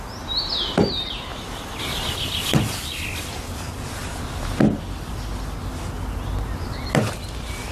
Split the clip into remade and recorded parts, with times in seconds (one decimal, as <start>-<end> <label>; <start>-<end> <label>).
0.0-7.7 recorded